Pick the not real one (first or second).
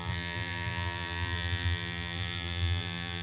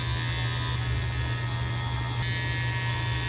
first